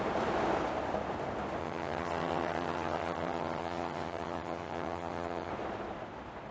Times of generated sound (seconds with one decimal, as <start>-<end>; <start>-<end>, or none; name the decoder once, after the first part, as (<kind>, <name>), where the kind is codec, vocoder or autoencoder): 1.6-5.5 (vocoder, HiFi-GAN)

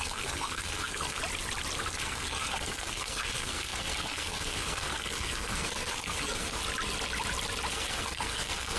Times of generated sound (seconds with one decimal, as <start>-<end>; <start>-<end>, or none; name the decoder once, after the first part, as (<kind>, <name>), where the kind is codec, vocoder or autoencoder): 0.0-1.2 (codec, SNAC); 1.9-6.6; 7.7-8.8

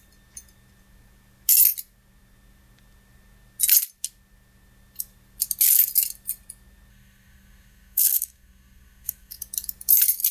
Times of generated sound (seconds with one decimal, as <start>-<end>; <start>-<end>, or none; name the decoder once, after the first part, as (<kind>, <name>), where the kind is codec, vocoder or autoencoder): 6.9-9.4 (codec, SNAC)